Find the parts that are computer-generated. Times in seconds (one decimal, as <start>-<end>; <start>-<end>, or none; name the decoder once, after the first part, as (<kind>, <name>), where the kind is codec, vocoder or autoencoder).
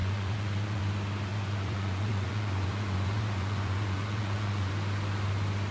0.0-0.8 (vocoder, Vocos); 1.3-4.7